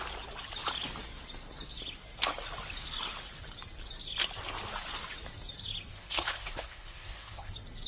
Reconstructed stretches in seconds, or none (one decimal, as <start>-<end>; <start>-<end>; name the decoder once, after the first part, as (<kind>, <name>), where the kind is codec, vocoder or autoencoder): 5.9-7.5 (codec, HILCodec)